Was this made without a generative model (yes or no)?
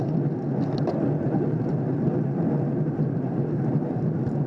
yes